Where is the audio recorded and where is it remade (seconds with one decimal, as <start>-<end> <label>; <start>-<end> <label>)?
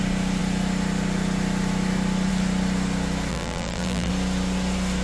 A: 0.0-3.3 recorded; 3.3-4.1 remade; 4.1-5.0 recorded